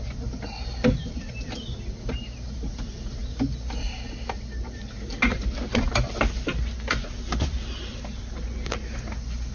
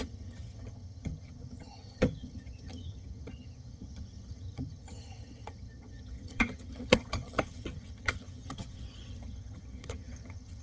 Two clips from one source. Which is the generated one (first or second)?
second